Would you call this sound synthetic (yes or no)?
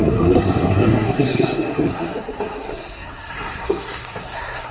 yes